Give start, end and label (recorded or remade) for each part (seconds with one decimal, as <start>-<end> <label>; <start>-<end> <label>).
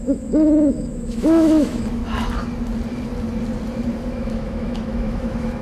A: 0.0-2.0 remade; 2.0-4.1 recorded; 4.1-5.6 remade